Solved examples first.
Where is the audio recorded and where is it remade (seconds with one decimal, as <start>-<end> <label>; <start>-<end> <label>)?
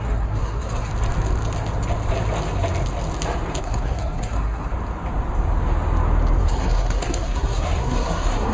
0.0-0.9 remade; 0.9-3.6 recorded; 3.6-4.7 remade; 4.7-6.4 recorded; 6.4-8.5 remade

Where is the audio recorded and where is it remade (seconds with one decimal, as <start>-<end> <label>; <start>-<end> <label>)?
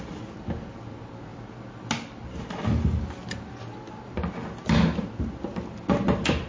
0.0-6.5 recorded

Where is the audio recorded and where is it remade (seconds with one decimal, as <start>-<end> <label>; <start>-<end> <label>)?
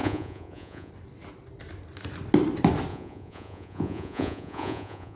0.0-0.9 remade; 0.9-2.9 recorded; 2.9-5.2 remade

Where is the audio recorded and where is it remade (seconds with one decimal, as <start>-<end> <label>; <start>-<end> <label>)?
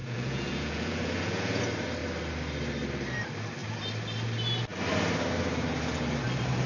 0.0-1.6 remade; 1.6-6.7 recorded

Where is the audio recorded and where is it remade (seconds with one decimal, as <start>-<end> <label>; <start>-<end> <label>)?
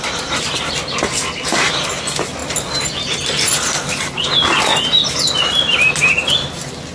0.0-6.9 recorded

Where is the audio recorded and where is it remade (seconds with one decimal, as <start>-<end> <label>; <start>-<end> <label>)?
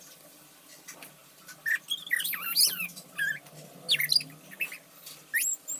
0.0-5.8 recorded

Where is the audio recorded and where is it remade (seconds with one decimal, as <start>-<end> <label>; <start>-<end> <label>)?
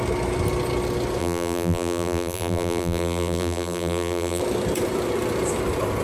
0.0-1.2 recorded; 1.2-4.4 remade; 4.4-6.0 recorded